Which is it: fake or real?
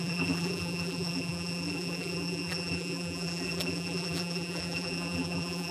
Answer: fake